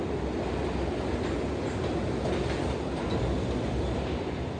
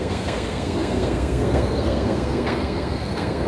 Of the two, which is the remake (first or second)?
second